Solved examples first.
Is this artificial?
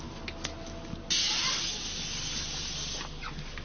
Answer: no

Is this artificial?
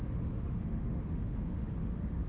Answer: yes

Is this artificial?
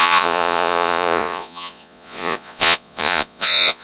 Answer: yes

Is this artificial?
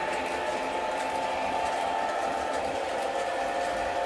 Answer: no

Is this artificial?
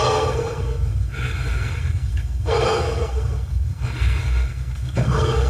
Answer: yes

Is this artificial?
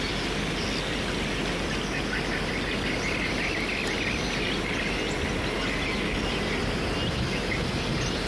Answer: no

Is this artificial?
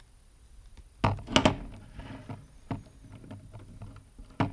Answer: no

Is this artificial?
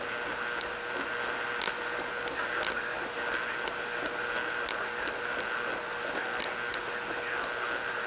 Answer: no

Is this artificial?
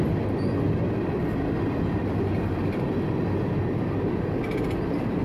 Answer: no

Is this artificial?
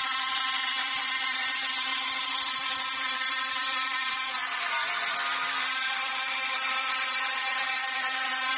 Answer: yes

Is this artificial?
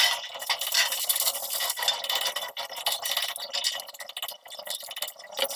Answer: no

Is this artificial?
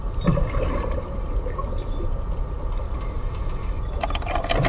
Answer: no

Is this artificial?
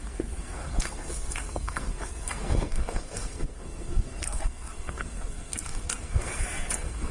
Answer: yes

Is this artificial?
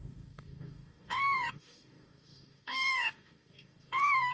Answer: yes